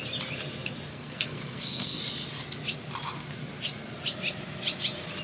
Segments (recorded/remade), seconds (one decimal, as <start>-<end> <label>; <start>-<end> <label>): 0.0-0.9 recorded; 0.9-2.0 remade; 2.0-5.2 recorded